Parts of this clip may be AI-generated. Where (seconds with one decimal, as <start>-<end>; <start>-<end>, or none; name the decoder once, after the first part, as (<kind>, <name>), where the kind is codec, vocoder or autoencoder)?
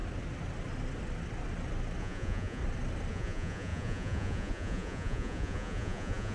2.0-2.6 (vocoder, Vocos); 3.1-6.3